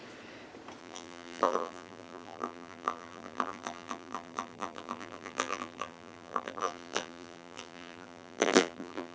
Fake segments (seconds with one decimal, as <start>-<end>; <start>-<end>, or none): 0.8-9.1